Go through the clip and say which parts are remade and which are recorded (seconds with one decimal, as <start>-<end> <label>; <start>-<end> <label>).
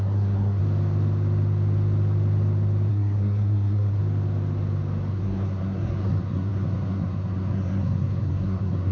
0.0-0.6 remade; 0.6-2.9 recorded; 2.9-4.0 remade; 4.0-5.1 recorded; 5.1-8.9 remade